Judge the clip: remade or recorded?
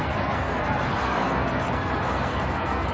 remade